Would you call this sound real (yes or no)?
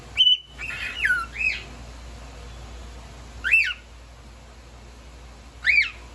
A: yes